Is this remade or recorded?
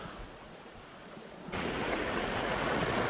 remade